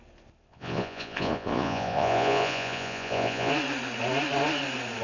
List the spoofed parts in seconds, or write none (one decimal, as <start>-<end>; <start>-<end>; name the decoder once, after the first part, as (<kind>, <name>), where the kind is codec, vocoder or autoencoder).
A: 0.5-3.5 (vocoder, Vocos)